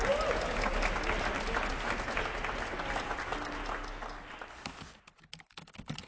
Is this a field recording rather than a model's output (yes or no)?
yes